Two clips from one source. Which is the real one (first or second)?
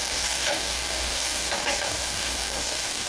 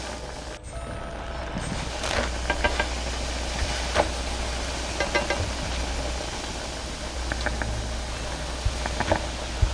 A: second